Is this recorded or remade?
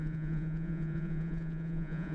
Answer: remade